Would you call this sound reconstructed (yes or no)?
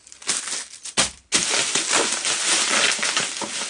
no